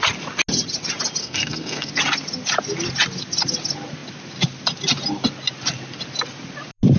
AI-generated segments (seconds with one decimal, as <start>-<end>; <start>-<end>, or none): 1.2-1.9